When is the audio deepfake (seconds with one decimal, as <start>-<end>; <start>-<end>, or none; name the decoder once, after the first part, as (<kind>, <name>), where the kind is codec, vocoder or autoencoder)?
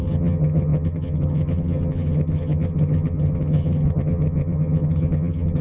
0.0-5.6 (vocoder, HiFi-GAN)